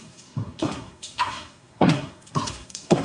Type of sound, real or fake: fake